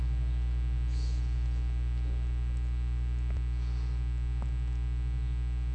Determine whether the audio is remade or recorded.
recorded